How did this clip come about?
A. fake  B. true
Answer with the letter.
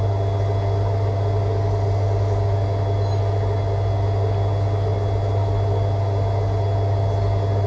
B